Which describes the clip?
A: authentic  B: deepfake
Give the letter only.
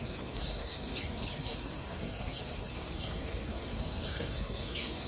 B